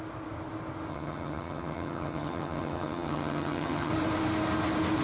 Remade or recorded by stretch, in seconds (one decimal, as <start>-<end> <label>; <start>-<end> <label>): 0.0-0.9 recorded; 0.9-3.9 remade; 3.9-5.0 recorded